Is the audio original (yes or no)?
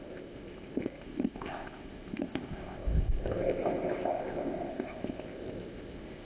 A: no